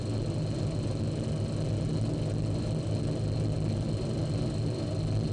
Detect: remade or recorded recorded